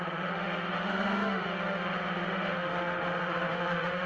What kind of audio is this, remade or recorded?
remade